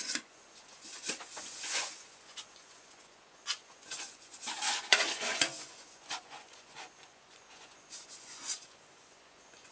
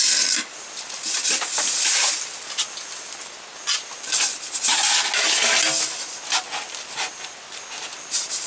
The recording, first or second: second